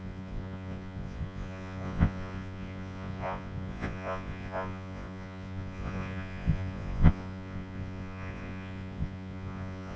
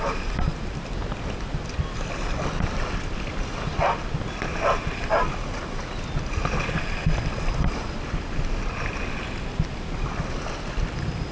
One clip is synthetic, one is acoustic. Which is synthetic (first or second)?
first